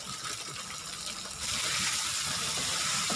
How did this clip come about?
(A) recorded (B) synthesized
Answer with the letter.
A